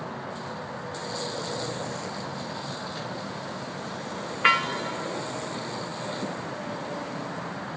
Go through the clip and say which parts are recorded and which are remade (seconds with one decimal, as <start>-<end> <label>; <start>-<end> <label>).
0.0-7.8 recorded